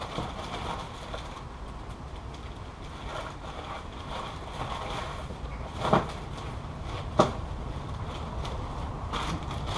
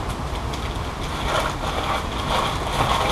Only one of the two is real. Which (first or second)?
second